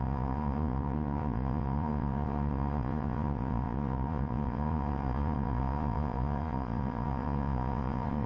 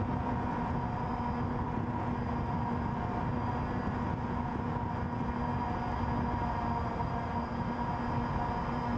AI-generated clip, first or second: first